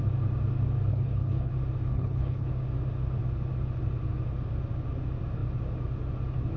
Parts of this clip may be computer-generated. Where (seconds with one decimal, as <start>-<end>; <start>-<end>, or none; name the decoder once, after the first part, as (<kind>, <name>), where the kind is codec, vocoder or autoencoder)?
0.9-1.5 (codec, HILCodec); 1.9-2.5